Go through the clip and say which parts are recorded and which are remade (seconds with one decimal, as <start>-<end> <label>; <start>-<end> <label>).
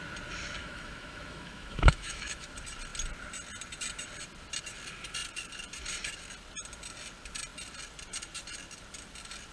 0.0-0.6 recorded; 0.6-2.5 remade; 2.5-9.5 recorded